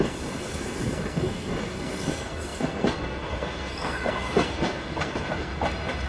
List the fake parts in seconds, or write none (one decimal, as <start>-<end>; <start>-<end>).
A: 0.0-5.5